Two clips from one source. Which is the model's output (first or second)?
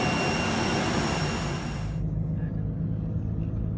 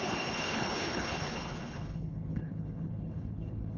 second